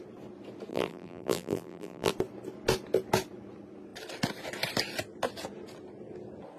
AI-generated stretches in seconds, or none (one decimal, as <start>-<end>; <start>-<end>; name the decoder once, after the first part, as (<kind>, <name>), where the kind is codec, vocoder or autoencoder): 0.7-2.1 (vocoder, BigVGAN v2)